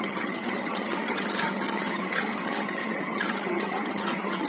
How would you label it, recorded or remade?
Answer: remade